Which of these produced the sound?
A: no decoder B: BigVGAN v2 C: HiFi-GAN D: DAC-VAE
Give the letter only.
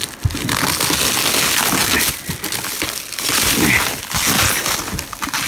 A